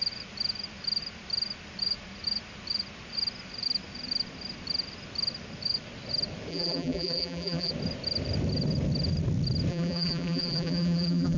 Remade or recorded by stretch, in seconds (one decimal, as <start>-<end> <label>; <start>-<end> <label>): 0.0-6.5 recorded; 6.5-7.7 remade; 7.7-9.7 recorded; 9.7-11.4 remade